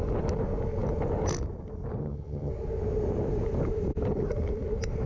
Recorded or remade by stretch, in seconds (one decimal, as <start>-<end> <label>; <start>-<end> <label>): 0.0-2.0 recorded; 2.0-2.5 remade; 2.5-5.1 recorded